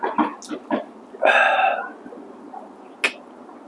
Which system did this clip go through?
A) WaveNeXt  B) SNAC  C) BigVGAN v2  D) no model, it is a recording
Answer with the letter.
D